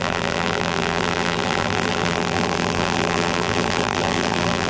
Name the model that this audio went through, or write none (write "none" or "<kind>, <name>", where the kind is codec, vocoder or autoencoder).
vocoder, BigVGAN v2